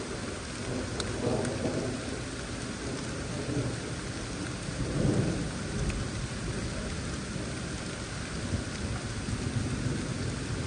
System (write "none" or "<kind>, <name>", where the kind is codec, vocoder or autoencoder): none